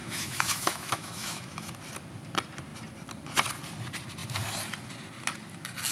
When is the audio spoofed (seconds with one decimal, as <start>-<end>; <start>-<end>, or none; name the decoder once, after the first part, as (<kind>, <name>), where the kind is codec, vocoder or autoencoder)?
0.0-1.7 (autoencoder, DAC-VAE)